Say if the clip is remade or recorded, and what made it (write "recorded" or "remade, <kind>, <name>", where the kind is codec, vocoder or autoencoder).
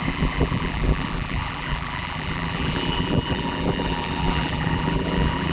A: remade, vocoder, BigVGAN v2